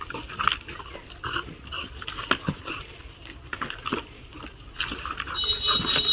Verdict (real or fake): real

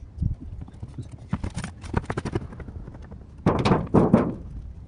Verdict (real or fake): real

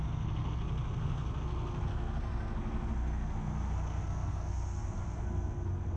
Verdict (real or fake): fake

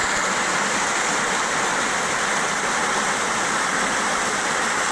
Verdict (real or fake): real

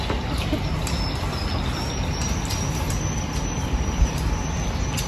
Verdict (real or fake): real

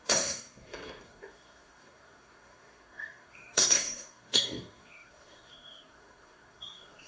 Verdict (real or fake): fake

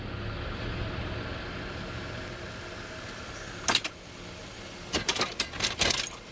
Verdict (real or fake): real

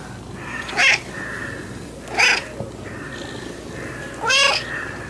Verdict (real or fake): real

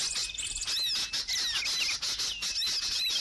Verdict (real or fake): real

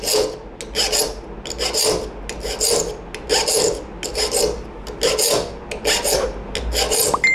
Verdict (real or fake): real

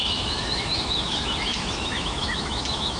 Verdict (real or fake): fake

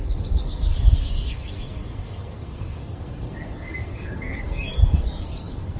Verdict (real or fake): fake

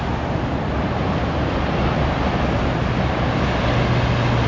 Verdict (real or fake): real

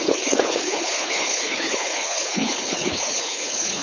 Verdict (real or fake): fake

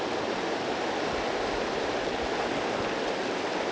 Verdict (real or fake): real